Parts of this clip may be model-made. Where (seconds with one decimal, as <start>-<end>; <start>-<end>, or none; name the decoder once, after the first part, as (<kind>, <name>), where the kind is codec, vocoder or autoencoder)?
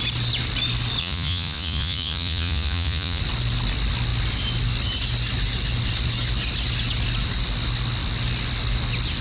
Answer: 1.0-3.2 (vocoder, Vocos)